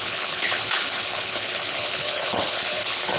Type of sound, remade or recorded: remade